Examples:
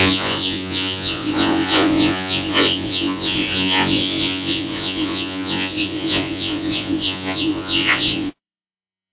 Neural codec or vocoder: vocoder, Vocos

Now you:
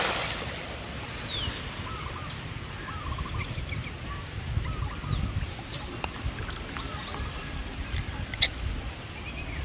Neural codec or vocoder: none